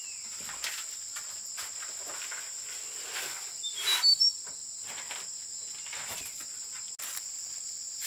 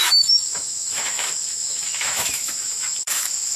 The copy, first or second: second